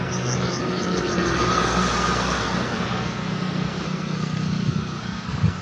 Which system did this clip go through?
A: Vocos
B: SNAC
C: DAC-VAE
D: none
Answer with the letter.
B